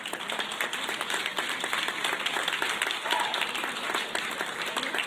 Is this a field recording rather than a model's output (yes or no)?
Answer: yes